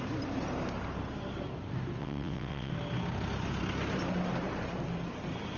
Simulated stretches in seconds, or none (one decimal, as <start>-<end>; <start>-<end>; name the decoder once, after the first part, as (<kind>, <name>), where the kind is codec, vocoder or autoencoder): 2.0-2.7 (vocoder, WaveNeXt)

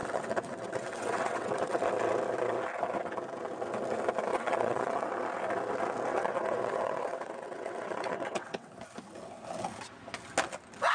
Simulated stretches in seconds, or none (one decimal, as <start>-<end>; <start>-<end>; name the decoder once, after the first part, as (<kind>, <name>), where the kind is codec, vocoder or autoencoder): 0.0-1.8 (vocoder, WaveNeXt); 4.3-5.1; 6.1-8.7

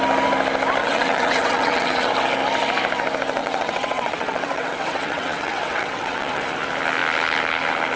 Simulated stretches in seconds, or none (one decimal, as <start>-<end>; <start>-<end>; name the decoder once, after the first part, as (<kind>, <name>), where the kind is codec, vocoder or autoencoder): 0.8-2.1 (vocoder, WaveNeXt); 3.4-6.4

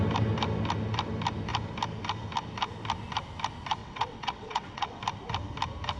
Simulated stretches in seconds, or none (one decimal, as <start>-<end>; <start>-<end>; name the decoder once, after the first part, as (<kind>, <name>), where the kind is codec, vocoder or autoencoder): 3.8-5.0 (vocoder, WaveNeXt)